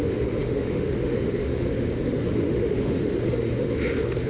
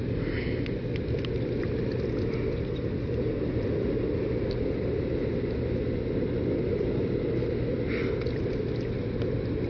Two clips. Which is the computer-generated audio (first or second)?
first